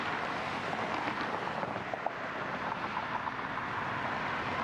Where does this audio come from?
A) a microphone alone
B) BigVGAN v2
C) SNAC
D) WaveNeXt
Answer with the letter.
A